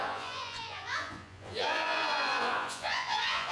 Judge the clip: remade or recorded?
remade